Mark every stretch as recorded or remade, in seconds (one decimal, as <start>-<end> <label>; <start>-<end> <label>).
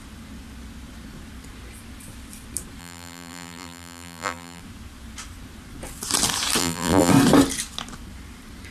0.0-2.8 recorded; 2.8-4.6 remade; 4.6-6.6 recorded; 6.6-7.1 remade; 7.1-8.7 recorded